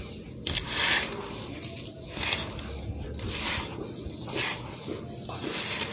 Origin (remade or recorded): recorded